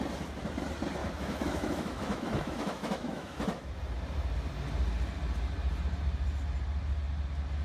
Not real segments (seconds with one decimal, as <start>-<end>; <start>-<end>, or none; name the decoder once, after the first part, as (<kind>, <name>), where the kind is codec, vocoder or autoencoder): 1.0-3.7 (autoencoder, DAC-VAE)